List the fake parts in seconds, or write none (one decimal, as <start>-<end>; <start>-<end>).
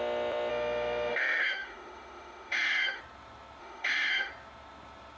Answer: 0.5-3.0; 3.6-4.3